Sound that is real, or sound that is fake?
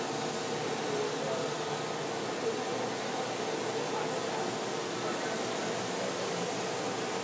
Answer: real